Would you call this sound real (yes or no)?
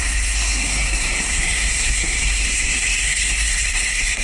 no